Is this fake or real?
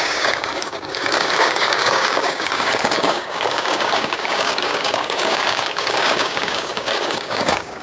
fake